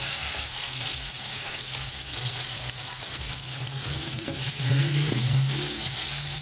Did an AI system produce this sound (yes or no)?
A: yes